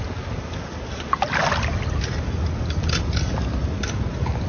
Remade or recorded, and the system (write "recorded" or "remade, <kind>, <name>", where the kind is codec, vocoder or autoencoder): recorded